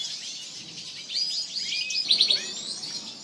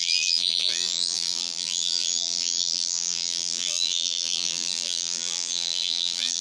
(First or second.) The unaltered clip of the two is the first